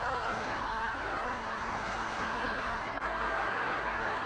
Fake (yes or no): yes